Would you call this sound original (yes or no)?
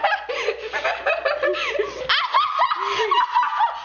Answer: yes